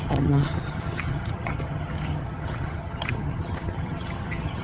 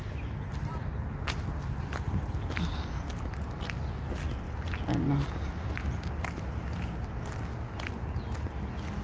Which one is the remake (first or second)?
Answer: first